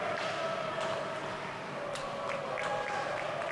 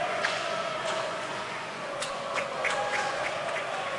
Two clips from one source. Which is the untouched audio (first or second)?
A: first